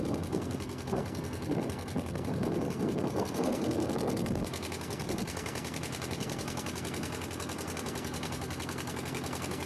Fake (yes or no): yes